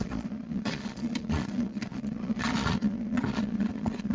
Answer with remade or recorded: remade